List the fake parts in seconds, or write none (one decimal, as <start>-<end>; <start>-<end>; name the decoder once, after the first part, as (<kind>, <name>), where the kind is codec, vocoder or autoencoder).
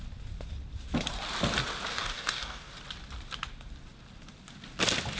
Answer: 1.9-2.7 (codec, DAC)